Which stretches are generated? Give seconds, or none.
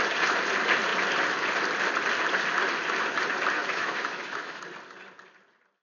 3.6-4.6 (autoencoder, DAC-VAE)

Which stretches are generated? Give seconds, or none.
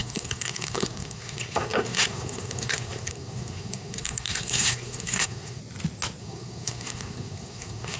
0.0-5.6 (codec, SNAC); 6.2-8.0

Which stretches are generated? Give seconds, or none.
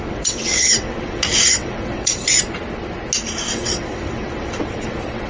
0.0-2.1 (vocoder, WaveNeXt); 3.5-5.3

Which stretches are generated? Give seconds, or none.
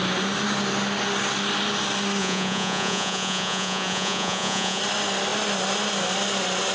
2.2-4.8 (vocoder, Vocos)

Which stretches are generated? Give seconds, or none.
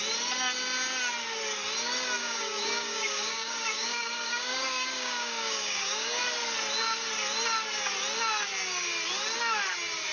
2.2-6.2 (codec, DAC)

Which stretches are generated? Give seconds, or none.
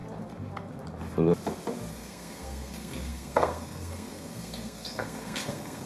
1.9-5.9 (codec, SNAC)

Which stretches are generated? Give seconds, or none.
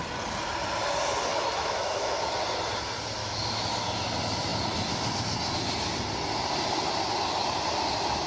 1.3-2.4 (autoencoder, DAC-VAE); 3.2-3.8